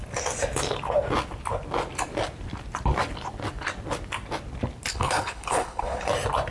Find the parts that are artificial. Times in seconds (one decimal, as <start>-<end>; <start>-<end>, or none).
4.9-6.1